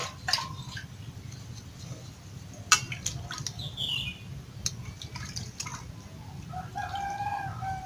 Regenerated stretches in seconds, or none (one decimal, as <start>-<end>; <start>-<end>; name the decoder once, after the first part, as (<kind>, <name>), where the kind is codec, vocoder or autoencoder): none